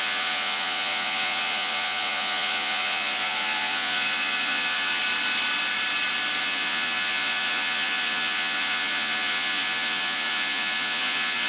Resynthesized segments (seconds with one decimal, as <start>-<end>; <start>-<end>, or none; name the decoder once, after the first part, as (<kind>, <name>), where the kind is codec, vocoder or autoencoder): 0.0-5.0 (vocoder, Vocos); 6.4-11.5

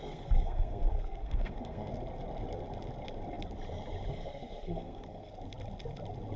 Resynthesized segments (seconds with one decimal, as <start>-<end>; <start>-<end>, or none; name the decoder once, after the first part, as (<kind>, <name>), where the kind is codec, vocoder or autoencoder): 0.0-1.9 (codec, SNAC); 4.1-5.3

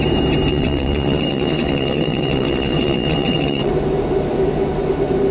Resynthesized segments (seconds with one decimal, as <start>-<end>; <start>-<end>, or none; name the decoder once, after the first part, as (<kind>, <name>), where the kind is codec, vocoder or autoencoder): 0.5-3.7 (vocoder, WaveNeXt)

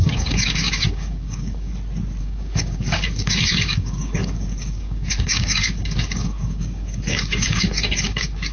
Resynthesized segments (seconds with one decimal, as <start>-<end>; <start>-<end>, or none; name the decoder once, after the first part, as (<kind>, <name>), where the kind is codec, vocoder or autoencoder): 0.0-1.7 (codec, DAC); 2.2-8.5

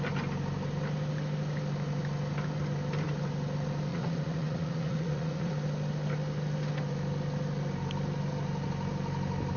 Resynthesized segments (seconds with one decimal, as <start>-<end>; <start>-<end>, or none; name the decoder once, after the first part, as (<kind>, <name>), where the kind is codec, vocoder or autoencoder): 3.9-5.5 (vocoder, Vocos)

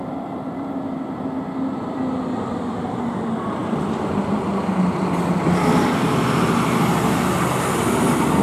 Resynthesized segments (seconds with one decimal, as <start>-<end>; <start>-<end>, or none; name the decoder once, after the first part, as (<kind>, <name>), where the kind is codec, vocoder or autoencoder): 3.6-5.0 (vocoder, BigVGAN v2)

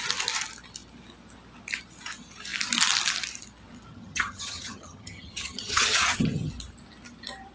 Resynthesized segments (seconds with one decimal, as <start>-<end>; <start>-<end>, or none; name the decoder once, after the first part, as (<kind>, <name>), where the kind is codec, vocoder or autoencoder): 3.9-6.5 (vocoder, HiFi-GAN)

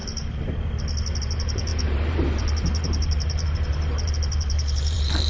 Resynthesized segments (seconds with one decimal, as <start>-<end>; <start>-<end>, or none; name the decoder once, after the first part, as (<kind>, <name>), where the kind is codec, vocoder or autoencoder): 1.2-5.3 (vocoder, BigVGAN v2)